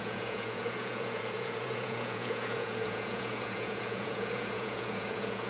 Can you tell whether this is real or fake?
fake